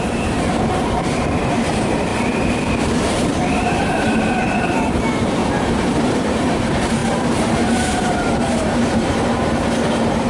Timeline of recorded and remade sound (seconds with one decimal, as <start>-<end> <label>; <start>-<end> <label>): 0.0-2.1 remade; 2.1-2.8 recorded; 2.8-10.3 remade